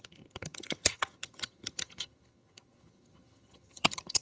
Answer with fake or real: fake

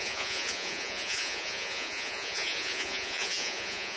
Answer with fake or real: fake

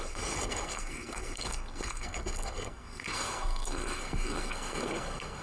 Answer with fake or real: fake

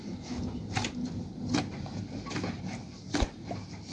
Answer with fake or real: real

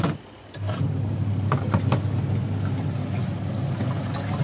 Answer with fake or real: real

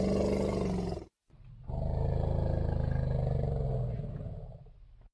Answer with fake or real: real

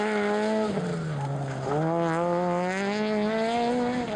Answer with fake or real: real